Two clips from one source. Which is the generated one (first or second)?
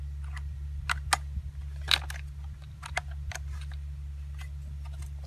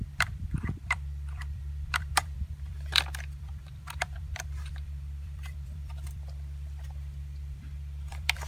second